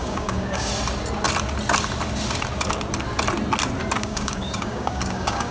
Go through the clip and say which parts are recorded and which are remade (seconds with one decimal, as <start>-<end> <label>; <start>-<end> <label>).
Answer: 0.0-0.7 remade; 0.7-4.0 recorded; 4.0-5.5 remade